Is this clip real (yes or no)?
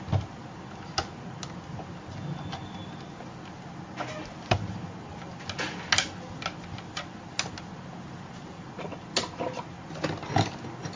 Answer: yes